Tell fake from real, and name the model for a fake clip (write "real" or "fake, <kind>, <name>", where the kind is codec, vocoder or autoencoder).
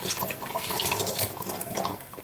fake, codec, SNAC